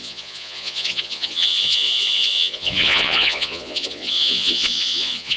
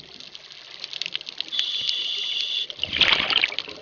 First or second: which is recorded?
second